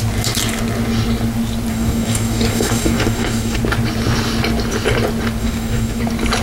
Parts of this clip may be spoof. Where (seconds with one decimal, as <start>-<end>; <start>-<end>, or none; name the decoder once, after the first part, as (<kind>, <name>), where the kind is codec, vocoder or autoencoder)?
1.7-3.6 (codec, DAC); 5.4-6.0